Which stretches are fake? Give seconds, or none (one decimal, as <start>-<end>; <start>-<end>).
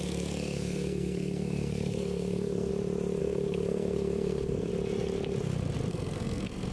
0.0-2.7; 3.2-4.7; 5.9-6.7